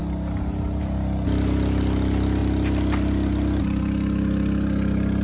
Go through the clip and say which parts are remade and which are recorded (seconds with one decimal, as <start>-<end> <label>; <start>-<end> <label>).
0.0-5.2 recorded